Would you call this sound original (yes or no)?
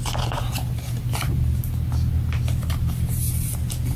yes